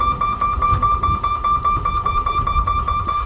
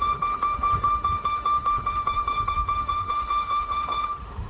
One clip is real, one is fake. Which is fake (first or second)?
second